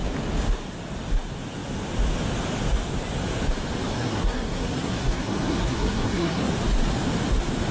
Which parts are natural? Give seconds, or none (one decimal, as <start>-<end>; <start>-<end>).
0.0-3.9; 6.5-7.7

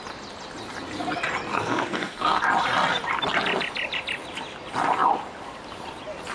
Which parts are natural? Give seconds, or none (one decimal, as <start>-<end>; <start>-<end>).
0.0-1.5; 2.4-6.3

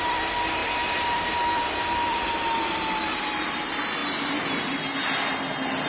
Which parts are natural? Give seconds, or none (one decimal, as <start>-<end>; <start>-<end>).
0.0-5.9

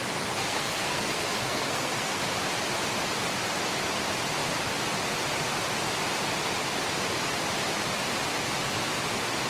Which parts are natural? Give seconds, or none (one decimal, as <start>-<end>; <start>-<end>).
0.0-0.4; 2.2-9.5